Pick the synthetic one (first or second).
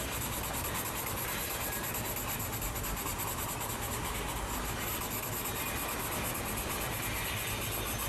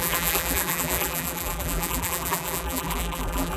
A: second